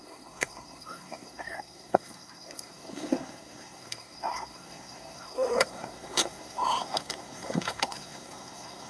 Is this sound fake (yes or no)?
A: yes